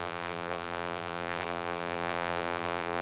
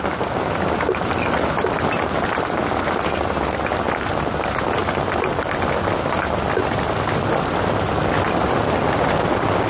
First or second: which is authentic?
second